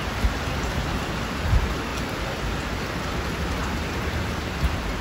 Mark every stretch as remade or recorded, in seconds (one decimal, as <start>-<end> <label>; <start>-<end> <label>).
0.0-5.0 recorded